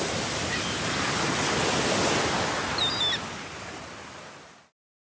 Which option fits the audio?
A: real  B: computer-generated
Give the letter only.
A